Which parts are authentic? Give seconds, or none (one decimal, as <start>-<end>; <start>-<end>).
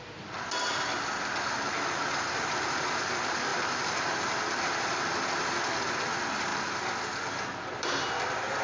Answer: 0.0-8.6